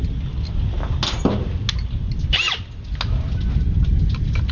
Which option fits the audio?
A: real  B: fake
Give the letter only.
A